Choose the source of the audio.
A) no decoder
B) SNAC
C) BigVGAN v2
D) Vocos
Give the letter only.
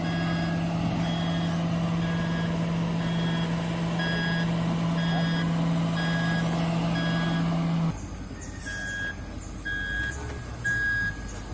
A